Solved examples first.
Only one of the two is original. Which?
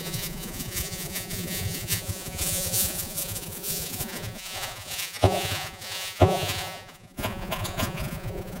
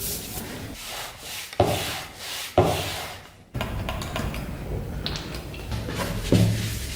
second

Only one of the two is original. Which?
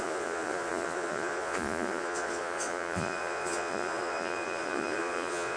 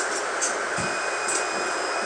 second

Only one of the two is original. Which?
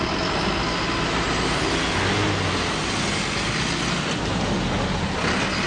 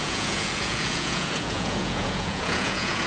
first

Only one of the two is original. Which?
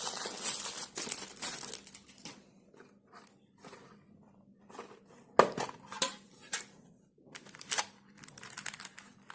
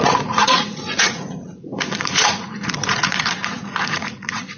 first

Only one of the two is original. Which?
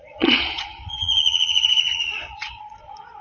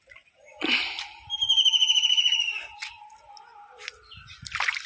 second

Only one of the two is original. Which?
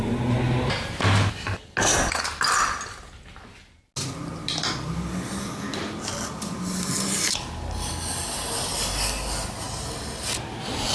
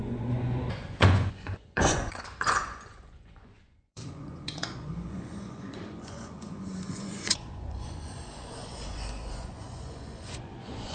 first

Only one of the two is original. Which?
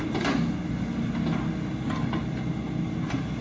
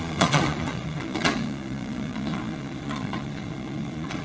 first